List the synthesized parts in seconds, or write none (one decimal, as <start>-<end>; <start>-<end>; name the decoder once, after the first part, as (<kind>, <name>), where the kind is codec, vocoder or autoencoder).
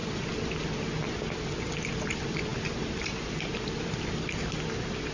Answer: none